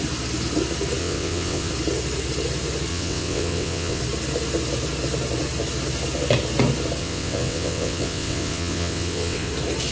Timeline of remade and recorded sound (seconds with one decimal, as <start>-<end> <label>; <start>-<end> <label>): 0.0-1.0 recorded; 1.0-1.7 remade; 1.7-2.9 recorded; 2.9-4.0 remade; 4.0-7.0 recorded; 7.0-9.5 remade; 9.5-9.9 recorded